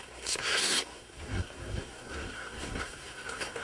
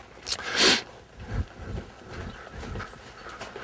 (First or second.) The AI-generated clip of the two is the first